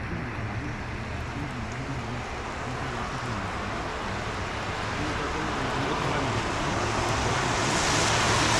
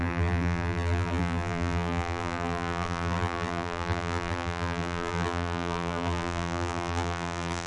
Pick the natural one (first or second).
first